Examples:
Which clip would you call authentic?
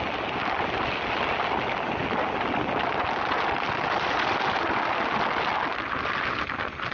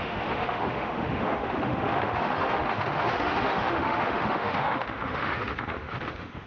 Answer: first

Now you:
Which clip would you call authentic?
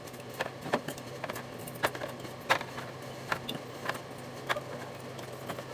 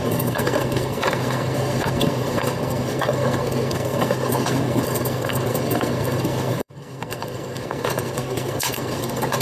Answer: first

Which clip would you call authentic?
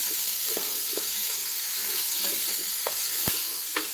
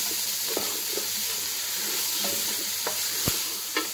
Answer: second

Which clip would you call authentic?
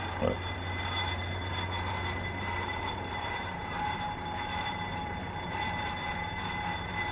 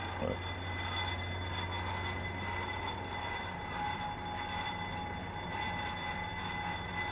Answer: second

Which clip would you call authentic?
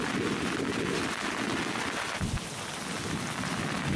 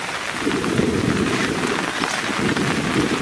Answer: first